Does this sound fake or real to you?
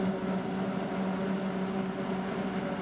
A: real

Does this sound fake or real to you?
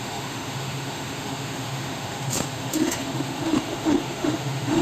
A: fake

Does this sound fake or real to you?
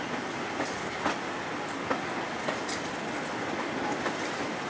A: real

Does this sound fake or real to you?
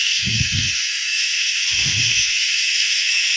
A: fake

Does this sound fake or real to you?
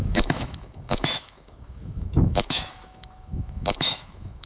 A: fake